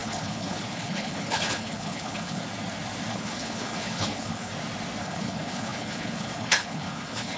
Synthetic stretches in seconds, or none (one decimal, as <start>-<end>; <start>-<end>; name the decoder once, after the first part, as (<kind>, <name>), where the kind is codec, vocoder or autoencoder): 0.0-2.4 (codec, HILCodec); 3.1-4.5; 5.0-7.4